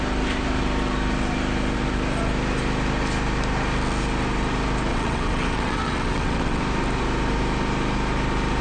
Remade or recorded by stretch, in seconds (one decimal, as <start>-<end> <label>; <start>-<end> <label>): 0.0-4.9 recorded; 4.9-6.6 remade; 6.6-8.6 recorded